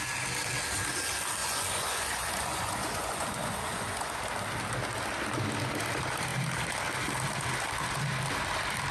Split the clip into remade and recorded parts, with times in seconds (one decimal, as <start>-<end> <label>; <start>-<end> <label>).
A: 0.0-1.4 recorded; 1.4-4.1 remade; 4.1-8.9 recorded